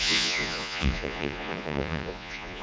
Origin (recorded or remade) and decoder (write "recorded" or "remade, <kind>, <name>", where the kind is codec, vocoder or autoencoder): remade, vocoder, Vocos